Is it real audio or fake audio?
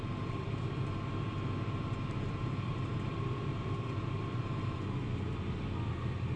fake